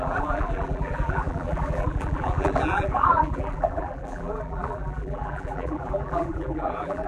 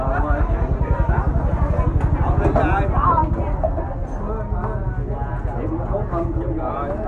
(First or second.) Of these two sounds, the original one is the second